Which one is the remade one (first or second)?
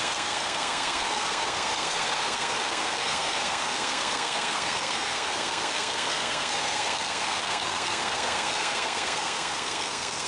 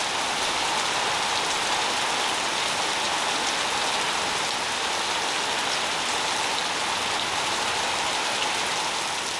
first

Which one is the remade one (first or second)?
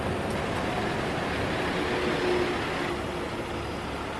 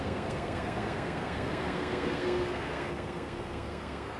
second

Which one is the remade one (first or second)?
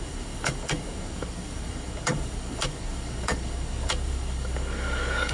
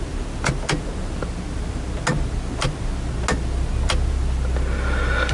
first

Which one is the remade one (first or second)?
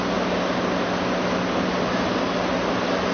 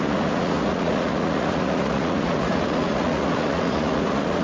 second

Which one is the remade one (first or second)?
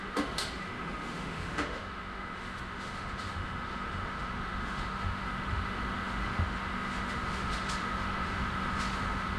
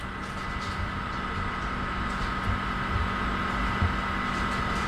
first